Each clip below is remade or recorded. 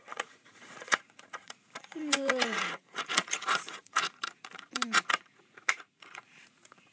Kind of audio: remade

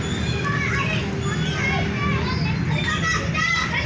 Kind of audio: recorded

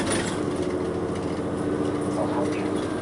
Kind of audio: recorded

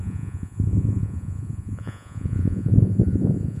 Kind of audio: remade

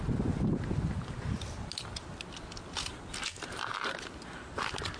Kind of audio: recorded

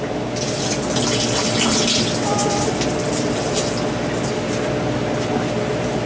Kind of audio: recorded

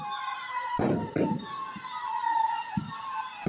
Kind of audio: recorded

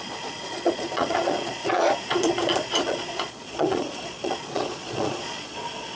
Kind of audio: remade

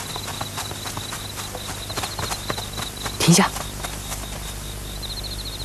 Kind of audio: recorded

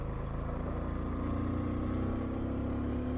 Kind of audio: recorded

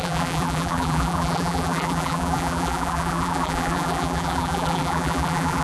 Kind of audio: remade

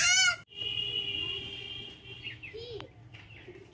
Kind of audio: recorded